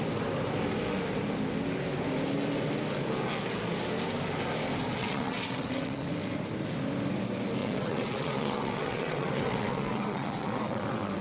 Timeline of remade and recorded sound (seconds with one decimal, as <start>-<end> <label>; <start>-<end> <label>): 0.0-5.0 recorded; 5.0-6.1 remade; 6.1-7.6 recorded; 7.6-11.2 remade